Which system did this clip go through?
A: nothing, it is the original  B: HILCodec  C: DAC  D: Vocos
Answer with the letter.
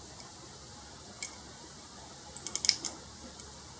A